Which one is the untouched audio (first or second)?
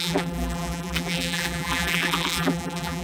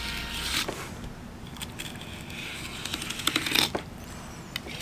second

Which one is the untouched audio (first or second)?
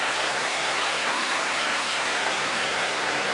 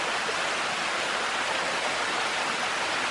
second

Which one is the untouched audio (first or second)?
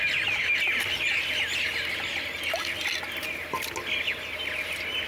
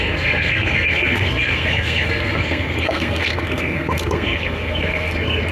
first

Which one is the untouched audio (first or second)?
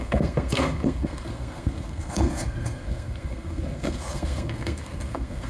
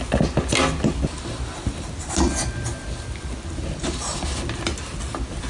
second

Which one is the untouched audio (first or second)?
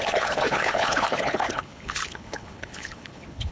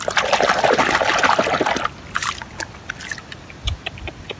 second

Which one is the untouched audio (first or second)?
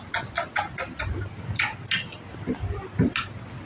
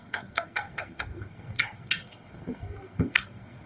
first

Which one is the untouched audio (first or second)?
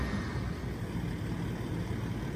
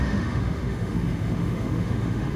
first